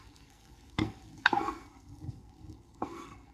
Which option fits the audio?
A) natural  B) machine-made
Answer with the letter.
B